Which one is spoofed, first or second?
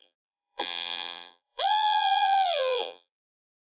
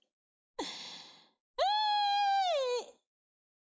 first